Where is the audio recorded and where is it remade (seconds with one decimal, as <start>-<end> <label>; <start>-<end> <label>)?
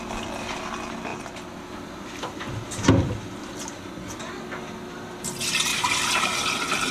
0.0-5.7 recorded; 5.7-6.5 remade; 6.5-6.9 recorded